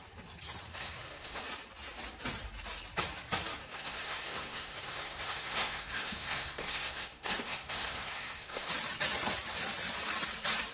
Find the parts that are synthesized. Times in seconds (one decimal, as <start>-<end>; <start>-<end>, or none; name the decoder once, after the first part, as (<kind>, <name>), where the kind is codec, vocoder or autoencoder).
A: 0.7-1.4 (codec, SNAC); 3.6-8.7